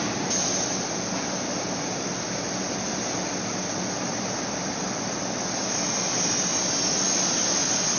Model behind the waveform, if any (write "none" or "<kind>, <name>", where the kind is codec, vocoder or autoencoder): none